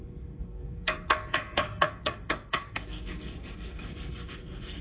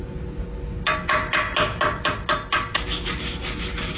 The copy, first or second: first